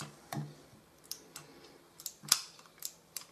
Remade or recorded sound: recorded